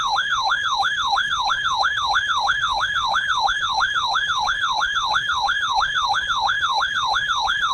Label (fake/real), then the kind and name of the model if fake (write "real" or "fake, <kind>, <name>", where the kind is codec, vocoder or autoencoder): fake, codec, HILCodec